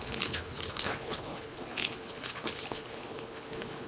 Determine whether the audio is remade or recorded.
remade